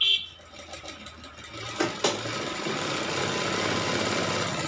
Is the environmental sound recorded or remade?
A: recorded